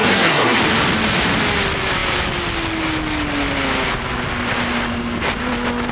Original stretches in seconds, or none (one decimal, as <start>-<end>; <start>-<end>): 0.6-5.9